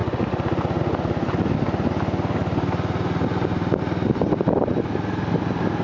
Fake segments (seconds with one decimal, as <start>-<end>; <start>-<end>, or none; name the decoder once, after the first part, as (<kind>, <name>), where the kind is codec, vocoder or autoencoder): none